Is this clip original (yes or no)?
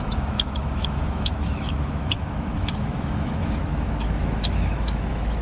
no